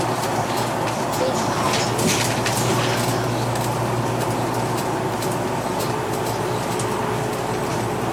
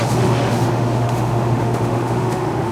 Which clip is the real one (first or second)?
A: first